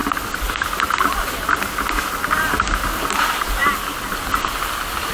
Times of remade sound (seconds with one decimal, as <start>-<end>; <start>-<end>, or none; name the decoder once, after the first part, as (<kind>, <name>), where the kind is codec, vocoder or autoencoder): none